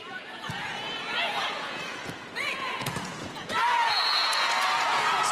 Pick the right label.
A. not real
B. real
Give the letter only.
A